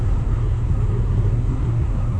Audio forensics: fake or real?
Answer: fake